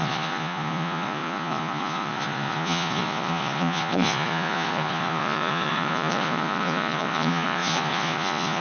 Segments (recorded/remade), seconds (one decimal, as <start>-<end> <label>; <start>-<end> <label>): 0.0-8.6 remade